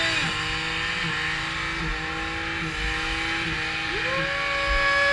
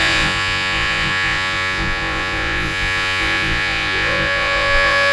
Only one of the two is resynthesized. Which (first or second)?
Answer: second